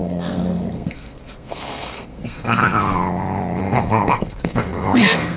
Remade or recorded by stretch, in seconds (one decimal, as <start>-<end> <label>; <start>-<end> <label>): 0.0-2.6 remade; 2.6-3.6 recorded; 3.6-5.4 remade